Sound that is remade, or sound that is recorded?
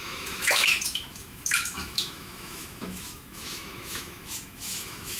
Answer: remade